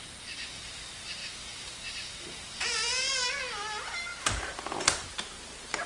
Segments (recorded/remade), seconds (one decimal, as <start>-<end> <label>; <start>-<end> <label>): 0.0-1.2 recorded; 1.2-3.4 remade; 3.4-5.9 recorded